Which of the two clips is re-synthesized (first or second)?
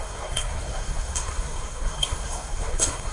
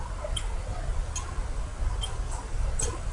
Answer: first